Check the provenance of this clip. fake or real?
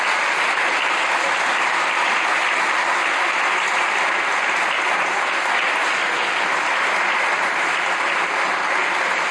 real